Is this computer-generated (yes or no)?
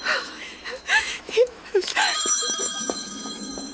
yes